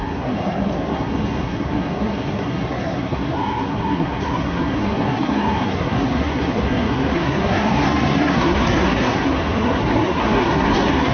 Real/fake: fake